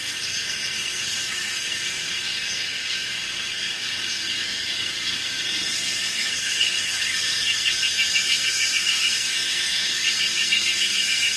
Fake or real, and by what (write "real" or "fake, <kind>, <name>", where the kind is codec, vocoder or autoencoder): fake, codec, SNAC